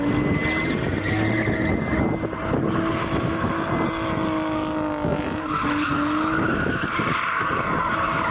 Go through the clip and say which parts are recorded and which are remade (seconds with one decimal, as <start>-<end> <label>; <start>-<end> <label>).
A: 0.0-8.3 recorded